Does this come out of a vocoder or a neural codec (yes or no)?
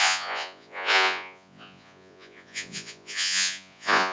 yes